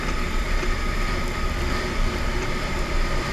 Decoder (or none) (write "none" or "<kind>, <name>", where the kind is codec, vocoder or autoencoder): vocoder, BigVGAN v2